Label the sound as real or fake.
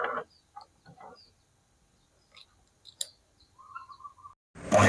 real